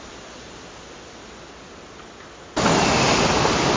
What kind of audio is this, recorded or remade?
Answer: recorded